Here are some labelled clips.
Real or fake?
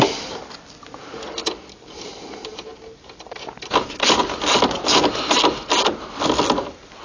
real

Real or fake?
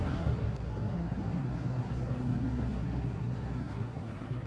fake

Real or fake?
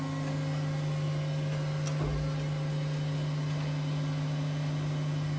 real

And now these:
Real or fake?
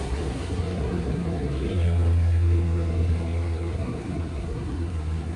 fake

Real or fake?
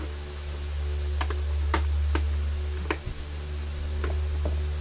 real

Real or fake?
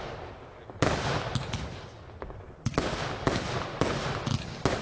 real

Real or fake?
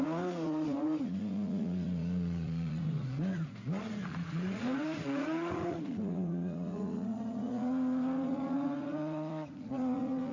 fake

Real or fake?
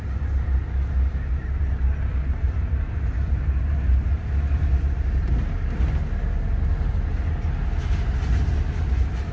real